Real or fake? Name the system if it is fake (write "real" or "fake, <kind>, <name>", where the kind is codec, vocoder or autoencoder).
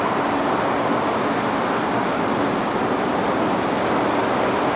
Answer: real